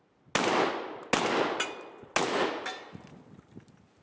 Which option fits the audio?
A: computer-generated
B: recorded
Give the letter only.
B